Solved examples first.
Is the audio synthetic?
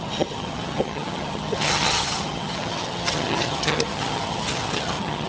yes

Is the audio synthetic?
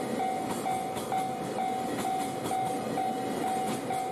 no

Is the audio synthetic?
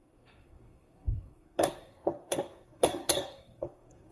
yes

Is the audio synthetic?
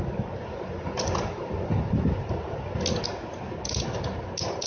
no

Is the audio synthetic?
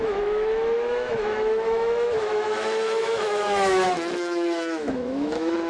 yes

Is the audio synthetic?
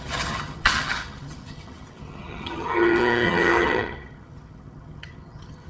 yes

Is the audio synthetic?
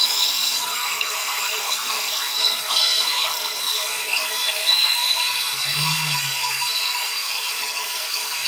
yes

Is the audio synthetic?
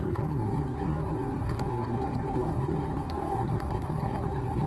yes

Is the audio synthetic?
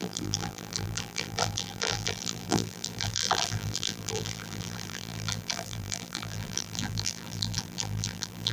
yes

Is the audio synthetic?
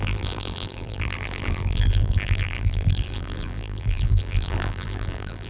yes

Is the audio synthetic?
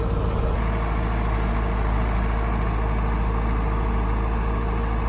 no